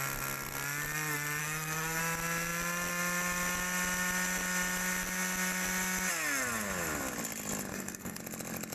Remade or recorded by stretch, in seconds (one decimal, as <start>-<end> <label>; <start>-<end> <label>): 0.0-1.4 recorded; 1.4-2.0 remade; 2.0-7.7 recorded; 7.7-8.2 remade; 8.2-8.7 recorded